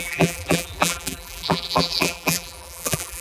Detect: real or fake fake